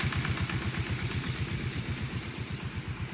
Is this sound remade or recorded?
recorded